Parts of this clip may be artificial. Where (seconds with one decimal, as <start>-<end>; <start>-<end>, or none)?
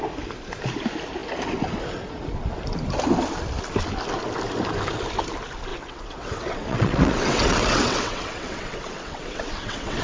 5.7-10.0